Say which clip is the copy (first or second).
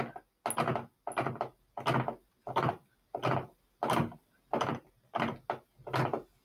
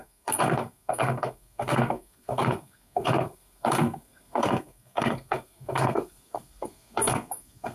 second